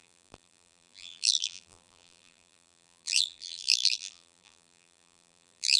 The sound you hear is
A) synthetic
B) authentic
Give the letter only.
A